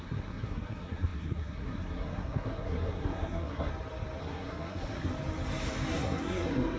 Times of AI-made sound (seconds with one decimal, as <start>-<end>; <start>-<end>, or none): 0.0-3.7; 4.2-5.1; 5.9-6.8

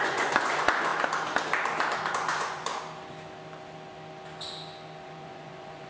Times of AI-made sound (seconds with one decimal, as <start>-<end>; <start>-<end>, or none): 0.0-0.9; 2.1-2.7; 5.0-5.9

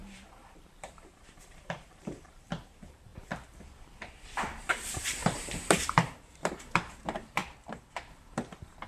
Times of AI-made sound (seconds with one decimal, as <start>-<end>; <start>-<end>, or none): 1.1-3.1; 4.6-7.4; 8.1-8.9

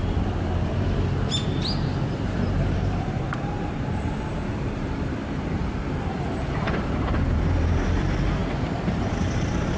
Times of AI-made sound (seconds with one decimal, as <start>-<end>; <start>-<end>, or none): 0.0-9.8